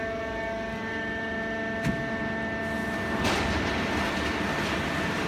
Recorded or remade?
recorded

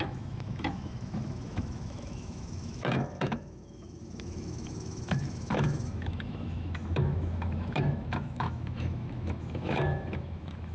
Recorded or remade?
remade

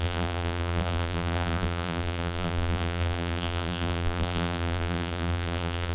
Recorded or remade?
remade